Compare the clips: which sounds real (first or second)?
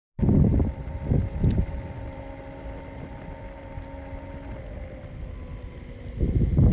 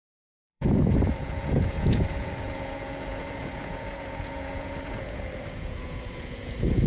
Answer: first